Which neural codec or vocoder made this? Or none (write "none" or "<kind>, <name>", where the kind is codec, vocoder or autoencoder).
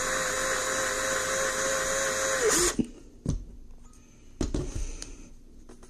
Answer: none